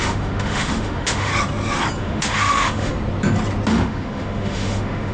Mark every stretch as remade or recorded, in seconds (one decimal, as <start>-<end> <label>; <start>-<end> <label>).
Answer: 0.0-1.3 remade; 1.3-2.0 recorded; 2.0-2.9 remade; 2.9-3.7 recorded; 3.7-5.1 remade